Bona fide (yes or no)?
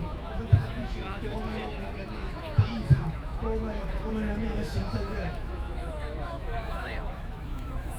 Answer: no